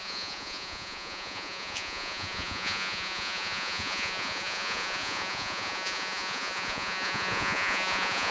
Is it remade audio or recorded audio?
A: remade